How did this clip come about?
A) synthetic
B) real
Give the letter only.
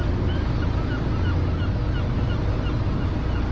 B